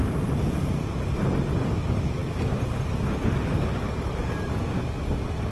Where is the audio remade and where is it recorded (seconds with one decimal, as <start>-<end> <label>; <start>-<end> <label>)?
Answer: 0.0-5.5 recorded